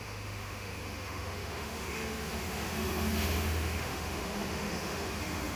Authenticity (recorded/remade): remade